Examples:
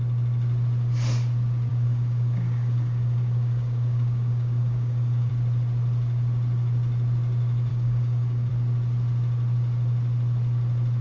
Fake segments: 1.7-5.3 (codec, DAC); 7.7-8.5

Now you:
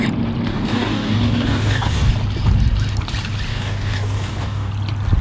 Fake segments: 0.5-2.1 (codec, DAC); 3.5-4.7

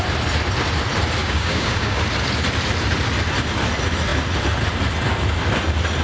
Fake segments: 1.2-2.0 (codec, DAC)